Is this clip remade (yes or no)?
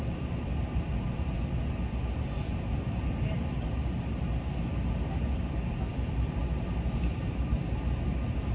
no